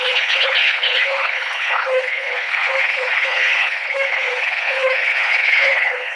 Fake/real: fake